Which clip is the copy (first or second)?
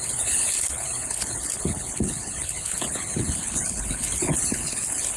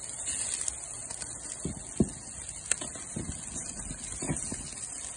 first